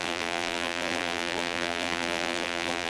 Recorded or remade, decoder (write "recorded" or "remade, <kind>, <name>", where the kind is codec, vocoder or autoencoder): remade, vocoder, BigVGAN v2